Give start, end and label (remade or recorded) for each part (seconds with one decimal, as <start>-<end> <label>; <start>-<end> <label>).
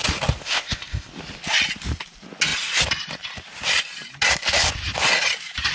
0.0-0.4 recorded; 0.4-1.1 remade; 1.1-5.7 recorded